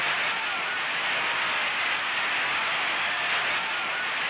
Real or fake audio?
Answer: real